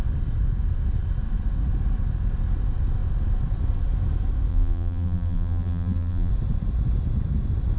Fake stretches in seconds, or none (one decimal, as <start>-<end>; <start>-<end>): 4.5-6.3